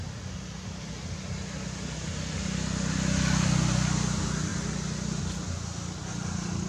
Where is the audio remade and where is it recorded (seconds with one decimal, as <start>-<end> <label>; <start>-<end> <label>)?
0.0-6.7 recorded